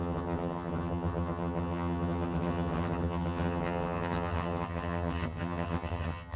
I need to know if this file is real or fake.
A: fake